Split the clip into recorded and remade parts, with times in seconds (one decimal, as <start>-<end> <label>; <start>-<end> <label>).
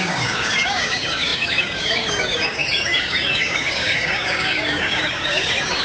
0.0-5.8 remade